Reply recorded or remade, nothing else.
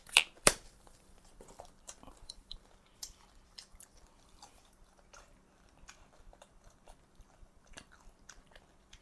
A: remade